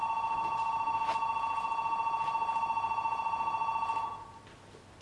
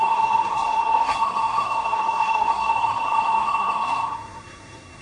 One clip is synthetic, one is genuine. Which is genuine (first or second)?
first